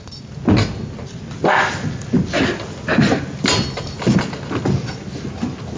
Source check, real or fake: real